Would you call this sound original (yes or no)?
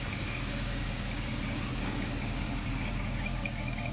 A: no